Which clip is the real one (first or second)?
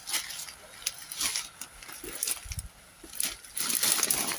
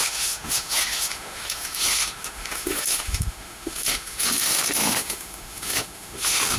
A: first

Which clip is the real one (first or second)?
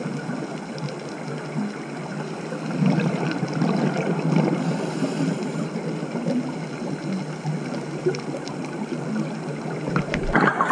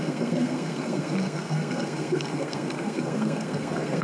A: first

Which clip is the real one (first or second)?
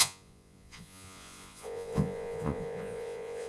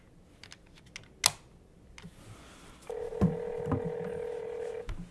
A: second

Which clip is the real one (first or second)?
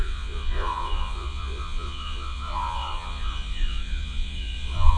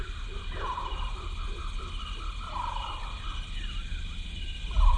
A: second